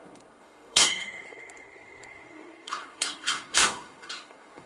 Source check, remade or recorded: remade